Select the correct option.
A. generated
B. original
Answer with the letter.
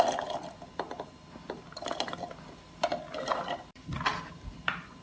A